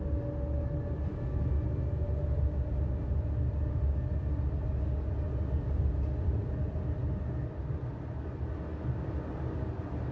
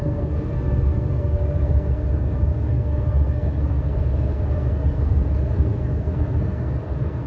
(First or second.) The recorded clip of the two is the first